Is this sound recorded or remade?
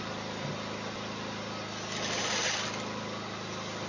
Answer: recorded